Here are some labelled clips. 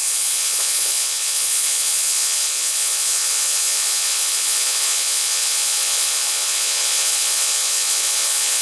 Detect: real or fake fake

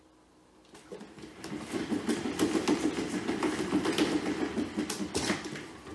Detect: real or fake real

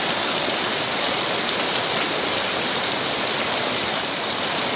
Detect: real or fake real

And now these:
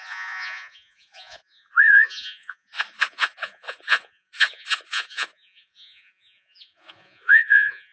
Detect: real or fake fake